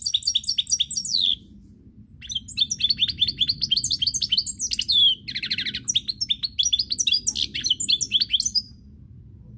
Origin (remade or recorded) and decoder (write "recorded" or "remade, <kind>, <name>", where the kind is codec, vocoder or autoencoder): recorded